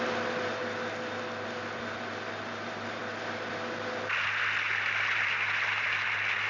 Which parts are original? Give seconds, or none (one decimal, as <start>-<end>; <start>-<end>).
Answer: 0.0-6.5